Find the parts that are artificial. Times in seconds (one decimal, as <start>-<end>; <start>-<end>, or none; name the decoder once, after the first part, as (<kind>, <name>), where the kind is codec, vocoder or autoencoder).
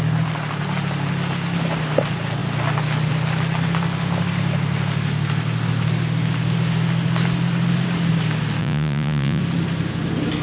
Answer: 8.6-9.4 (vocoder, Vocos)